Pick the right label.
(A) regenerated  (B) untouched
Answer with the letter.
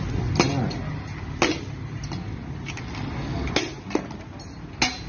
B